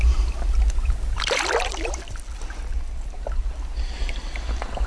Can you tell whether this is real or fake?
real